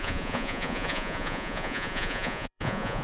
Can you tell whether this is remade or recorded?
remade